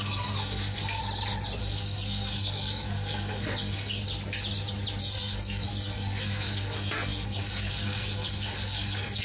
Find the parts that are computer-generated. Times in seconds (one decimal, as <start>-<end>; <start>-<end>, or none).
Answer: 0.0-1.0; 1.6-4.0; 5.0-9.2